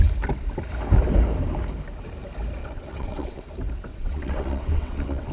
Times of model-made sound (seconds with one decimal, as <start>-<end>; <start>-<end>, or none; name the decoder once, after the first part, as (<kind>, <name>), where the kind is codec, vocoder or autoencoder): 2.6-3.4 (vocoder, WaveNeXt); 3.9-5.3